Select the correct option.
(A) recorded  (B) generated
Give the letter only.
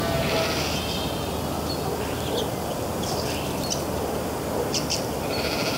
A